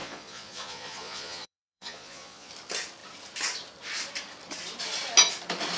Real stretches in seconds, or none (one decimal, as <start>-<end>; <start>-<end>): 2.5-5.8